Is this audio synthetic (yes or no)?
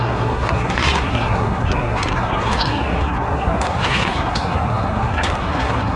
yes